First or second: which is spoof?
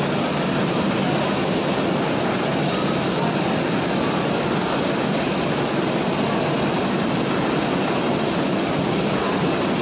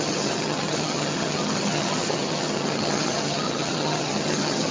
second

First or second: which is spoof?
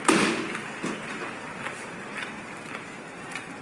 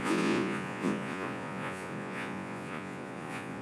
second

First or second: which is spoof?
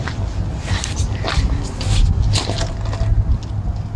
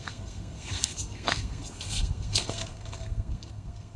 second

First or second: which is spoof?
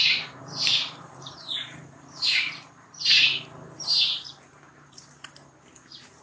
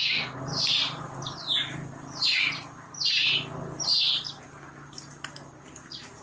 first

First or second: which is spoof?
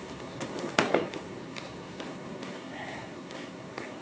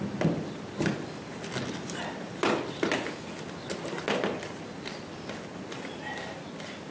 first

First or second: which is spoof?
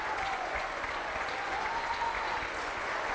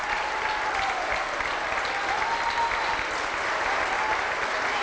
first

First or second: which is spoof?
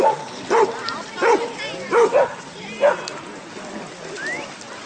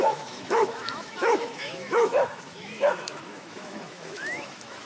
second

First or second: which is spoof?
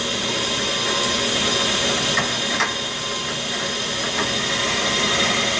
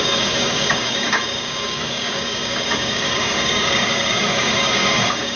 second